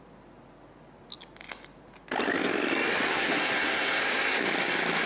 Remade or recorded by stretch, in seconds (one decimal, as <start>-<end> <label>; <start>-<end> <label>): 0.0-3.1 recorded; 3.1-4.0 remade; 4.0-5.1 recorded